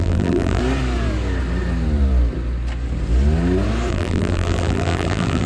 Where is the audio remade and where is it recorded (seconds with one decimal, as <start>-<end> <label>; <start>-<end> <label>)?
0.0-0.6 remade; 0.6-3.9 recorded; 3.9-5.5 remade